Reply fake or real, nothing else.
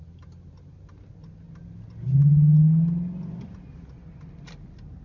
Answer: real